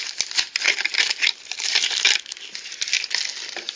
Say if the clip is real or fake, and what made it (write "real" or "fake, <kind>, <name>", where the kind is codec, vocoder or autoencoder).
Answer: real